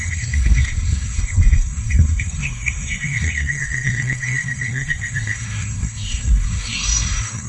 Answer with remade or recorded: remade